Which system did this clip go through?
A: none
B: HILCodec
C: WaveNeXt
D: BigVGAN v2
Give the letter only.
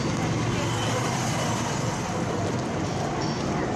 A